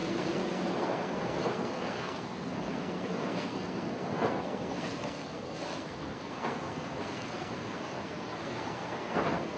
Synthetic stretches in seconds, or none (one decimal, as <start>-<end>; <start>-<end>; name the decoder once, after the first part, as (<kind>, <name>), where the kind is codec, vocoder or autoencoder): 0.0-9.6 (codec, SNAC)